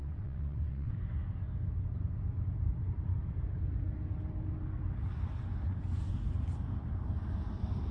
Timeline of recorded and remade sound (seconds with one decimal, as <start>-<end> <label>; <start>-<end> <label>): 0.0-0.9 remade; 0.9-7.9 recorded